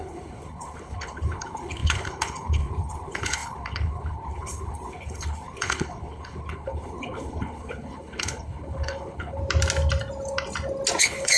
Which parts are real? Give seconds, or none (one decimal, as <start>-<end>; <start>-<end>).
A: 9.4-11.0